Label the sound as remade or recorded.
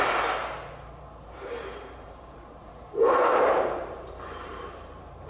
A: remade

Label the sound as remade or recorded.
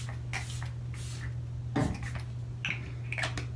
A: recorded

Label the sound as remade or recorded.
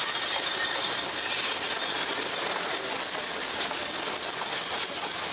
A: recorded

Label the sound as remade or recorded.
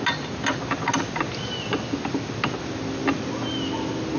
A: recorded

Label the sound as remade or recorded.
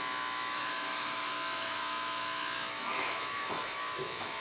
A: remade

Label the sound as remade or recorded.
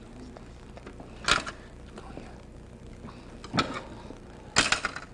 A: recorded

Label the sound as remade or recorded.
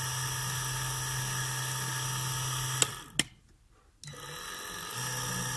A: recorded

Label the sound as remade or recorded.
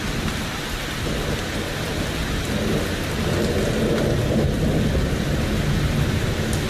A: recorded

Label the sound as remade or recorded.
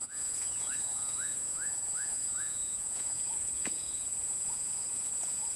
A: remade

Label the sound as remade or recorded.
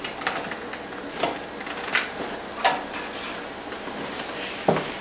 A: recorded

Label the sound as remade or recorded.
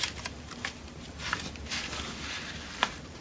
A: recorded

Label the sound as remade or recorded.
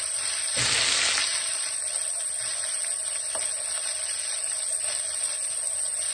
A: recorded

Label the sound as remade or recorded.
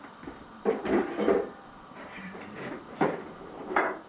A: remade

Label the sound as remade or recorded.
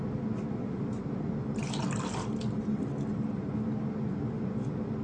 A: recorded